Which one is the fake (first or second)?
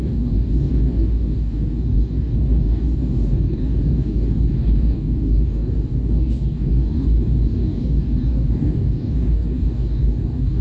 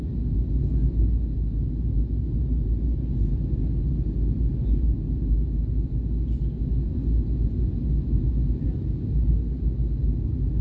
first